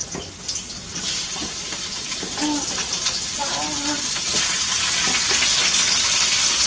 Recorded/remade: recorded